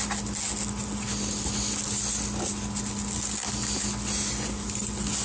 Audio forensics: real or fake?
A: real